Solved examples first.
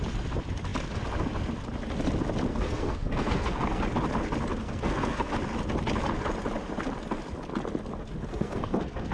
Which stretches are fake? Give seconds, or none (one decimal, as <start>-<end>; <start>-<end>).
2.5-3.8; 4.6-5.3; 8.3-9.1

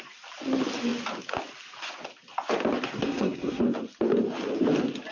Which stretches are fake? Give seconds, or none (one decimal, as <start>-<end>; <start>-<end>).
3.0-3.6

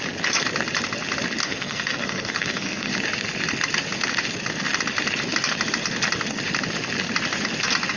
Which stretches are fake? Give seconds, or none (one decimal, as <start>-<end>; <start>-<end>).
1.4-2.9

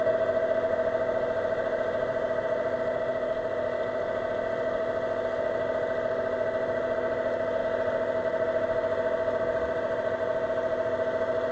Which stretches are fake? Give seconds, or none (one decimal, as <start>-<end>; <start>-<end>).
none

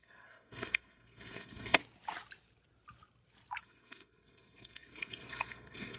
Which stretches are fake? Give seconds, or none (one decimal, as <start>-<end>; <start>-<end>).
0.0-1.8; 3.6-6.0

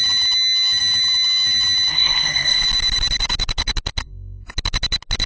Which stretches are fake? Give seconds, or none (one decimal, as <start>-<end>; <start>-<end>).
1.9-2.6; 4.0-4.5

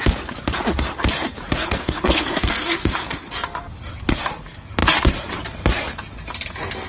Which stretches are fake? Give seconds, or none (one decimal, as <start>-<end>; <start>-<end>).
1.6-3.3